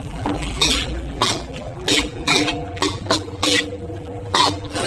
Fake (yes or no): yes